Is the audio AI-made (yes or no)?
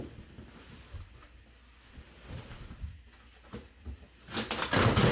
no